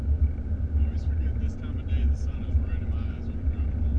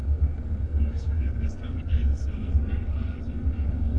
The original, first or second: first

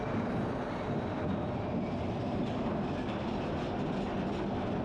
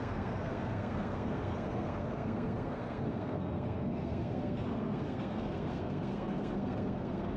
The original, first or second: first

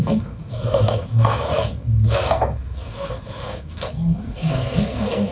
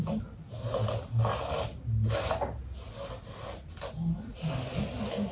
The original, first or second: second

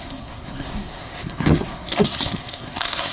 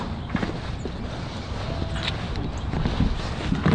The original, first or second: second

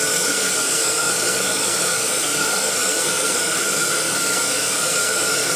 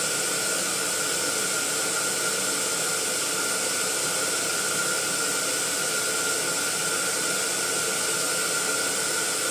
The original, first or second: second